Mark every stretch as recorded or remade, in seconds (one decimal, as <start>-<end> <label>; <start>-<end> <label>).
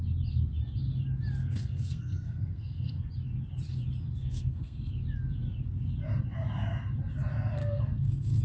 0.0-1.4 recorded; 1.4-3.1 remade; 3.1-4.2 recorded; 4.2-4.9 remade; 4.9-7.6 recorded; 7.6-8.4 remade